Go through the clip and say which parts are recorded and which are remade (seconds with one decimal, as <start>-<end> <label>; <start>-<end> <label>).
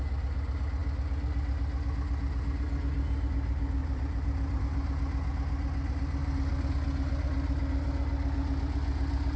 0.0-3.8 recorded; 3.8-4.6 remade; 4.6-9.4 recorded